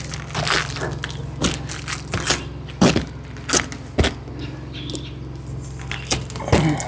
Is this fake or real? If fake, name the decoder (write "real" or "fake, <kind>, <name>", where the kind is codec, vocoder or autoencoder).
real